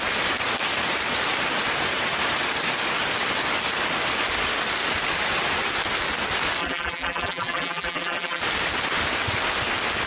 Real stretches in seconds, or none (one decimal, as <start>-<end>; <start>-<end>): 0.0-6.6; 8.4-10.1

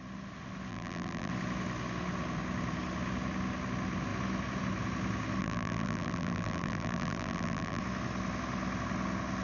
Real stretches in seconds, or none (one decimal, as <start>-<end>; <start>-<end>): 0.0-0.7; 1.3-5.4; 7.8-9.4

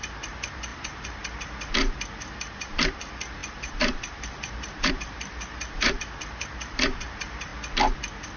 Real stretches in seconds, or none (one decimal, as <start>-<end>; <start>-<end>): 7.5-8.4